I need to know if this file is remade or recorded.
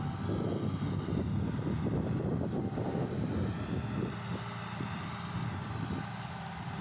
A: recorded